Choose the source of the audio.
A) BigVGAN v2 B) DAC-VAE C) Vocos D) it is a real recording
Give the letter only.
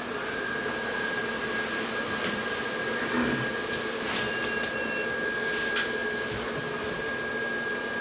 D